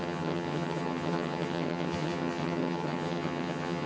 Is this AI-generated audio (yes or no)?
yes